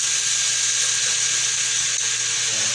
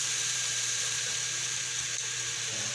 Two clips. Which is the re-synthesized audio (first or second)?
second